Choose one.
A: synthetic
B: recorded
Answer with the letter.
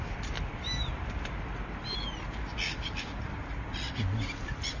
B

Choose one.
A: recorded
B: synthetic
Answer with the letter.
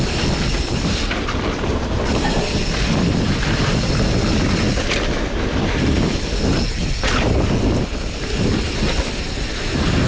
A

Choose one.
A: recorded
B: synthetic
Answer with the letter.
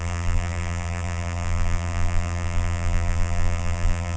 B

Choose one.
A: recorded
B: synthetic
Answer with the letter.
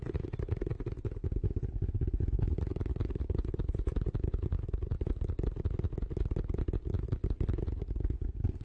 A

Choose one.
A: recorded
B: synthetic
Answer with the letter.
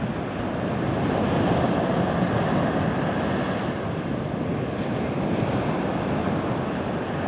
A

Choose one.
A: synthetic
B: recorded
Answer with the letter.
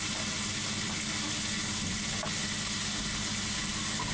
B